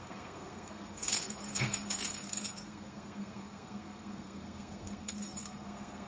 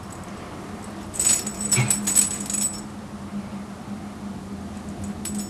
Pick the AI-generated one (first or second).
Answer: first